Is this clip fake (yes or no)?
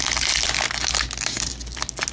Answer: no